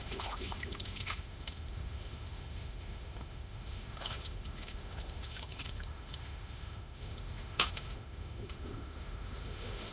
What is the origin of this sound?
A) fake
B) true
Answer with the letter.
A